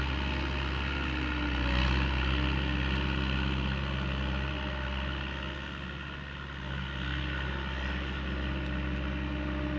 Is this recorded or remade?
recorded